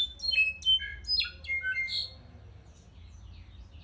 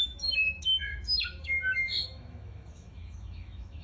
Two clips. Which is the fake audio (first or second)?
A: second